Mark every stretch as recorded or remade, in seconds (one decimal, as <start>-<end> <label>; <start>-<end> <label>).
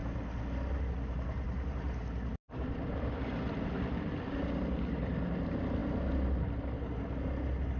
0.0-7.8 recorded